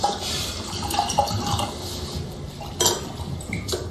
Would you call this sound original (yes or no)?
yes